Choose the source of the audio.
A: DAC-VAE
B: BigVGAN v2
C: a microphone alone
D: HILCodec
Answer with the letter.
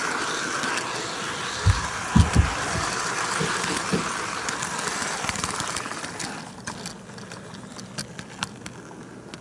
C